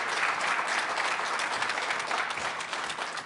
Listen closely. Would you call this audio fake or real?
real